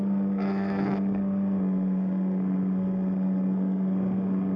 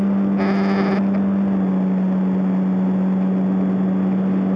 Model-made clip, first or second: first